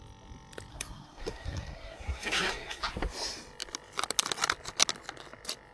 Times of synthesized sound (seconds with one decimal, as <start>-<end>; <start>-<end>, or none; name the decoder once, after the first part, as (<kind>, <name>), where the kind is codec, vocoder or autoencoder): 0.7-2.8 (codec, SNAC)